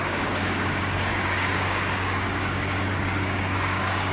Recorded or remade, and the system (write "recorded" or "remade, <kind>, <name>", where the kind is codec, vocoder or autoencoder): remade, codec, DAC